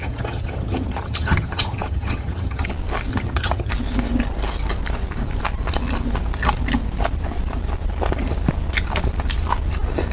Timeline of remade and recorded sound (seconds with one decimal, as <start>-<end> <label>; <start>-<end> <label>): 0.0-2.7 remade; 2.7-3.1 recorded; 3.1-3.7 remade; 3.7-10.1 recorded